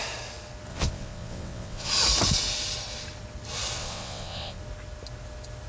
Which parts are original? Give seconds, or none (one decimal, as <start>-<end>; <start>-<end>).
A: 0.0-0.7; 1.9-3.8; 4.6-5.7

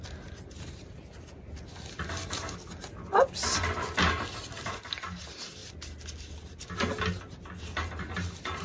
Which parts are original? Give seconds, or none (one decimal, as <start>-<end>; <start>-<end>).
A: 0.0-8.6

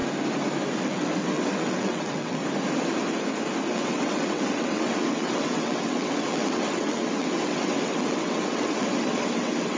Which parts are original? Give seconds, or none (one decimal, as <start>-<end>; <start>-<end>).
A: 0.0-0.8; 2.4-3.7

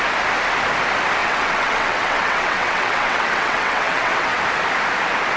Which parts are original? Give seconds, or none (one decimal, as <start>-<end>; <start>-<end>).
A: 0.0-1.2; 4.4-5.4